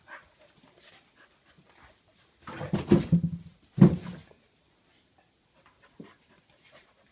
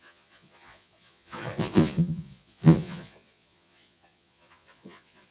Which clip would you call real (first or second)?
first